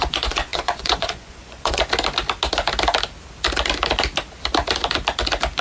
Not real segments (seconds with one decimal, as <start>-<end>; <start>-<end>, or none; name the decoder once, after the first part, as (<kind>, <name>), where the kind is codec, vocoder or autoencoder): 0.0-1.8 (vocoder, Vocos)